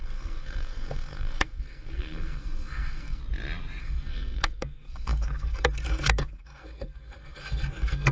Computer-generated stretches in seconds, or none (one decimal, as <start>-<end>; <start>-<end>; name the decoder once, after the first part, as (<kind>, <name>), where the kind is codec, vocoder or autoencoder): 0.0-3.2 (codec, SNAC); 3.8-8.1